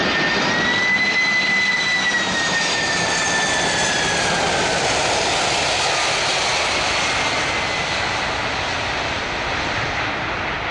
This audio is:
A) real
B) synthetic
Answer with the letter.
A